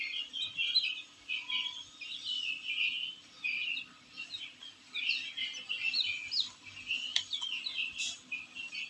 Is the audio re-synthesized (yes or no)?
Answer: no